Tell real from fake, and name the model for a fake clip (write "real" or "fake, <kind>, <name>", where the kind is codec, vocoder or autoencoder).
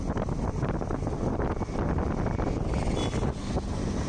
real